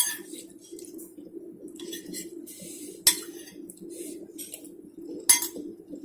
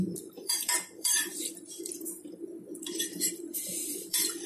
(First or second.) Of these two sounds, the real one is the first